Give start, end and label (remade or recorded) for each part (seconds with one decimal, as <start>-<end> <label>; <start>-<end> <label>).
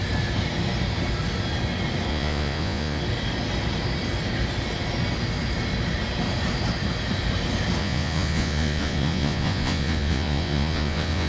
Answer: 0.0-2.1 recorded; 2.1-3.0 remade; 3.0-7.8 recorded; 7.8-11.3 remade